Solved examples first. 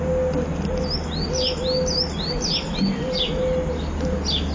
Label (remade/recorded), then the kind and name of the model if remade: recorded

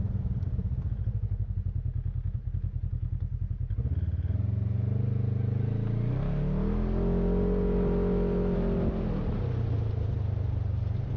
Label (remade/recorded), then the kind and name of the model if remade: recorded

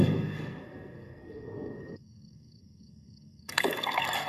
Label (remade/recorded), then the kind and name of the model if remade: remade, codec, SNAC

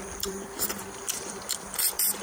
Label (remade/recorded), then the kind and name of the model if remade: remade, vocoder, BigVGAN v2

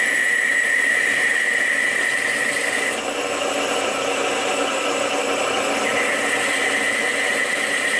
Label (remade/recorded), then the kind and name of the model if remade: recorded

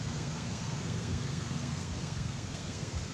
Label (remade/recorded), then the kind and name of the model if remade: remade, codec, SNAC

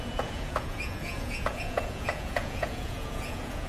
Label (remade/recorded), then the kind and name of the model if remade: remade, vocoder, Vocos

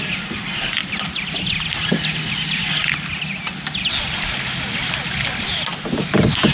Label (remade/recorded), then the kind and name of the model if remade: recorded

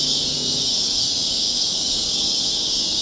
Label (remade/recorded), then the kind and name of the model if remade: remade, codec, DAC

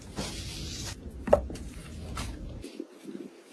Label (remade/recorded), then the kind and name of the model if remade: recorded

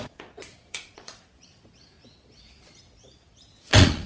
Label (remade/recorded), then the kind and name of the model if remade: remade, vocoder, Vocos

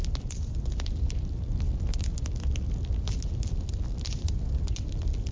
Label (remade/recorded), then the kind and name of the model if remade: recorded